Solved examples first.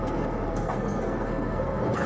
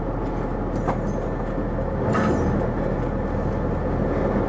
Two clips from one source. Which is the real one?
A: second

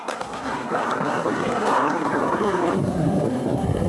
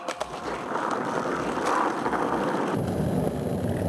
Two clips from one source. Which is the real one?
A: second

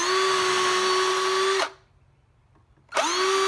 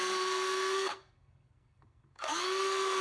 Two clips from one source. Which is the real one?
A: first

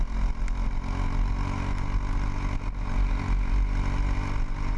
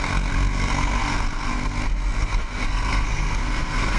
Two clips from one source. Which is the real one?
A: first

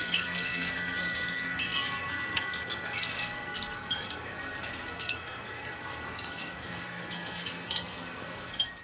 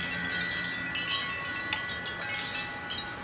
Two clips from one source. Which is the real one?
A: second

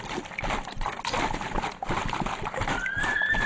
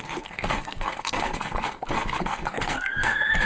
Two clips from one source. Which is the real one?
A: first